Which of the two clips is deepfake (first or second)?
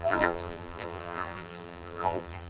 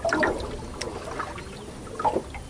first